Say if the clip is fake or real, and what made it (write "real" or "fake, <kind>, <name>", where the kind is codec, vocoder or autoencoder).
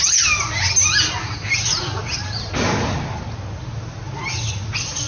real